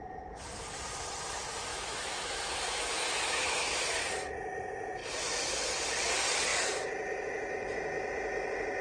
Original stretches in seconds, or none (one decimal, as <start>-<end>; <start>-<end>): 0.0-1.7; 3.8-8.8